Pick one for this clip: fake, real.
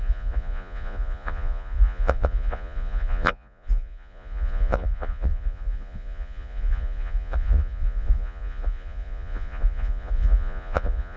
fake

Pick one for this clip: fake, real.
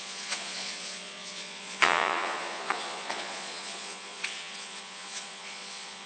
fake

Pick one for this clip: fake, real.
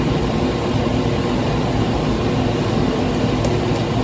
real